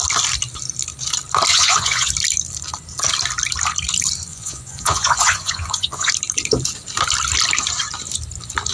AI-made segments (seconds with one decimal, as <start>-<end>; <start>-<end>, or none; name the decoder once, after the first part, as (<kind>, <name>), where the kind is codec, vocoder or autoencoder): 1.5-2.1 (vocoder, Vocos); 4.3-6.1